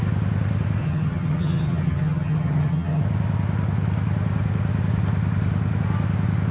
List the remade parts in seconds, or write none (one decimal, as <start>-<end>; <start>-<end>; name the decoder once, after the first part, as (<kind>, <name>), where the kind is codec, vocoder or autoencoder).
0.8-3.0 (vocoder, HiFi-GAN)

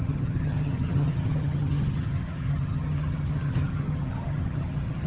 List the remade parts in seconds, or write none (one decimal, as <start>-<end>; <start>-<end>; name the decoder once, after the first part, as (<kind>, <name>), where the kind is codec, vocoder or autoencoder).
0.0-5.1 (vocoder, HiFi-GAN)

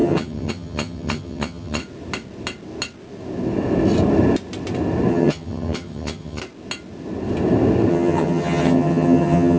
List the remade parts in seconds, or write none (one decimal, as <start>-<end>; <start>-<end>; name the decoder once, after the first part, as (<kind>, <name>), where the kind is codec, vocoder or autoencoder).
0.0-1.8 (vocoder, HiFi-GAN); 5.1-6.4; 7.9-9.6

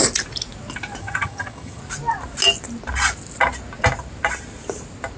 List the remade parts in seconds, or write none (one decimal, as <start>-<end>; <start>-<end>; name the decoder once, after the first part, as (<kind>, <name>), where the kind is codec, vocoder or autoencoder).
1.0-1.8 (vocoder, HiFi-GAN)